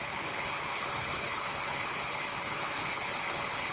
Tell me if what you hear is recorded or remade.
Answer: remade